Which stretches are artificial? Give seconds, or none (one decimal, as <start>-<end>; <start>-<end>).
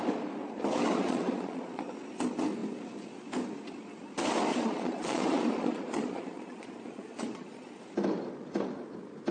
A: 0.9-1.9; 4.5-7.8